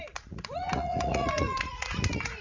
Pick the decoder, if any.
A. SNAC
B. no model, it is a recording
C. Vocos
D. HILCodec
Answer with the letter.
C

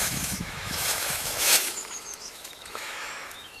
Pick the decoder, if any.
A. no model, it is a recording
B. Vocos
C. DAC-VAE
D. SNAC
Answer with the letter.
C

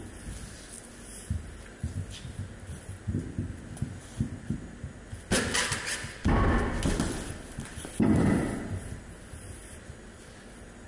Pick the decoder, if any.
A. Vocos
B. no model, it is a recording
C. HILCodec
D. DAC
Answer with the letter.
B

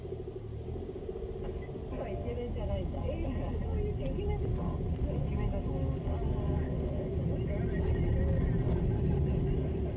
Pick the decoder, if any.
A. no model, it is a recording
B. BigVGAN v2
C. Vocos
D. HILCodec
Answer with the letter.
A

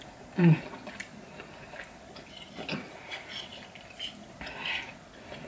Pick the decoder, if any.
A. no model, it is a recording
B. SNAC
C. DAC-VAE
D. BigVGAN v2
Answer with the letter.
D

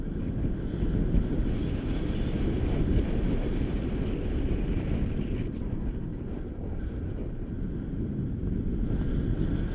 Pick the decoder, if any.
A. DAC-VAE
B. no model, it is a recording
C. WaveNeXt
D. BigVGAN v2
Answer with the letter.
B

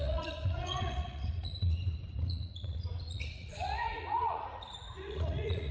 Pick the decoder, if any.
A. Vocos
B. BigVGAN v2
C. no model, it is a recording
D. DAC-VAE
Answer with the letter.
A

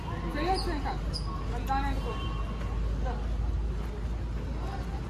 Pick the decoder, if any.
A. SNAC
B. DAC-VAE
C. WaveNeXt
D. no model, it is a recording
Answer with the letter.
D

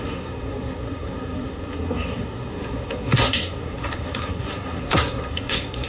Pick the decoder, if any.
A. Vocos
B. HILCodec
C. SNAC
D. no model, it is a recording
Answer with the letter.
C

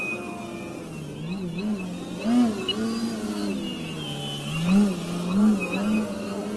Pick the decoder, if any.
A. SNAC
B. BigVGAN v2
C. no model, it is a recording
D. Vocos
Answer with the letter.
C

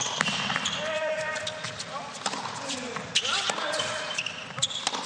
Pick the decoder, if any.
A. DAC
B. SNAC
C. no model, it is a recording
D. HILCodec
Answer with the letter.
C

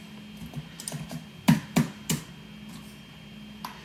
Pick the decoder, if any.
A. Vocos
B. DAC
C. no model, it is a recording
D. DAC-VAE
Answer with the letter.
C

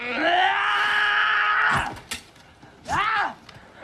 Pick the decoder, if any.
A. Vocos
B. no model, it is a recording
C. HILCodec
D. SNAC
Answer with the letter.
B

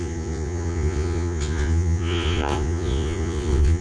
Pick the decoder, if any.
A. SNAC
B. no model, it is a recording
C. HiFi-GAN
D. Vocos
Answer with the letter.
D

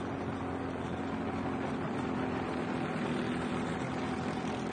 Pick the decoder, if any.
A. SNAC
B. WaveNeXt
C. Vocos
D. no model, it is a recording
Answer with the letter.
D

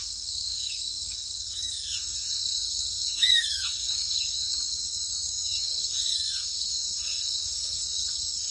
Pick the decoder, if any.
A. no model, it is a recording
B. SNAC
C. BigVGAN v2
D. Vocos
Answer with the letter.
B